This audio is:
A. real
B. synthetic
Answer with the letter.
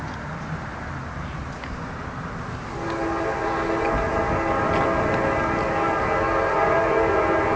A